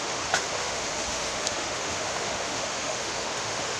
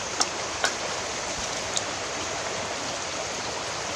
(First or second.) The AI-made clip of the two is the first